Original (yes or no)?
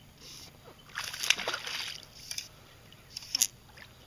yes